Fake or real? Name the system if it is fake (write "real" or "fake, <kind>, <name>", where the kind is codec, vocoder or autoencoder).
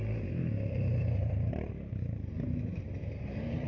fake, vocoder, BigVGAN v2